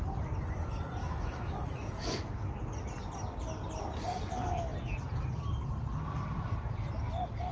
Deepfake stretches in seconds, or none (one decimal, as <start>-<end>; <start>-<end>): 1.0-2.5